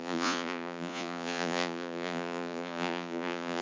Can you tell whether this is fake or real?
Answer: fake